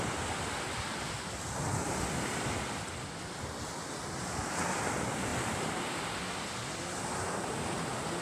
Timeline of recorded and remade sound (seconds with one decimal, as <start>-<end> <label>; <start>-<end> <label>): 0.0-5.3 recorded; 5.3-6.0 remade; 6.0-8.2 recorded